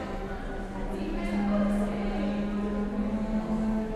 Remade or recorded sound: recorded